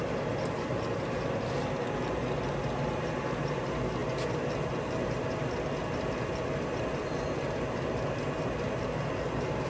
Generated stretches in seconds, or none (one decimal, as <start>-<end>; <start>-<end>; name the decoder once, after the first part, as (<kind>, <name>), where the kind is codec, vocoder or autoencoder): none